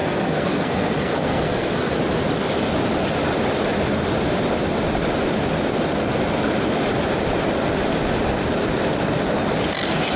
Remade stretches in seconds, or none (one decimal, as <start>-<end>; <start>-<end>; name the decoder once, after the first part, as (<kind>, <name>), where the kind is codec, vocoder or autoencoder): 0.0-2.0 (codec, SNAC)